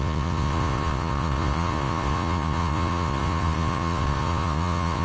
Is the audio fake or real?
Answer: fake